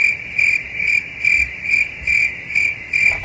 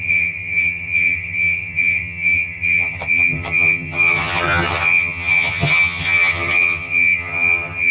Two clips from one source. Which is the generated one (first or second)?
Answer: second